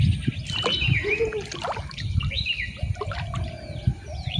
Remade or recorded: recorded